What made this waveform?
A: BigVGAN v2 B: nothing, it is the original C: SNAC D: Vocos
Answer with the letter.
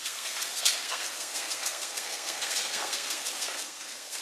C